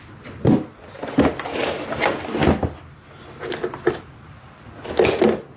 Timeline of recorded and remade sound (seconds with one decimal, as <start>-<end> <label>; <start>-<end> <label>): 0.0-5.6 recorded